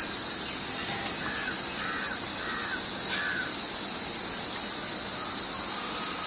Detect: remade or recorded recorded